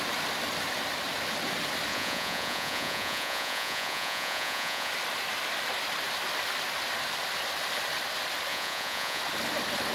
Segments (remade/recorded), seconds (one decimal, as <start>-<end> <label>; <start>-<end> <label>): 0.0-1.9 recorded; 1.9-4.9 remade; 4.9-8.5 recorded; 8.5-9.2 remade; 9.2-9.9 recorded